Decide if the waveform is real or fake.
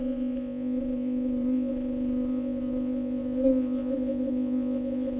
fake